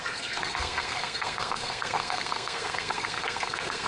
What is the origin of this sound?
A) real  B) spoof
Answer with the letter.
B